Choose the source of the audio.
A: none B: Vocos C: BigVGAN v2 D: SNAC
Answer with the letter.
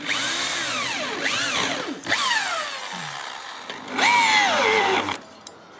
A